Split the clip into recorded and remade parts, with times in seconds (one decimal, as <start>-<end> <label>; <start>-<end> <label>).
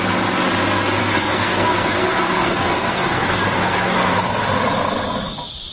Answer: 0.0-1.0 recorded; 1.0-4.4 remade; 4.4-5.7 recorded